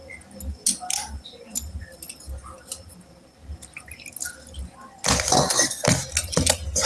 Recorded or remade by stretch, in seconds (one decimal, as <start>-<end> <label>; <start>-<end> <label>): 0.0-6.9 recorded